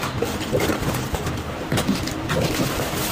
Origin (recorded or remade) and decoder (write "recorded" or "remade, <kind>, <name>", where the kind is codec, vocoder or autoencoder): recorded